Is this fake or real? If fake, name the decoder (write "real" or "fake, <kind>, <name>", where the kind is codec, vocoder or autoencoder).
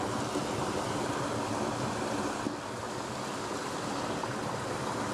real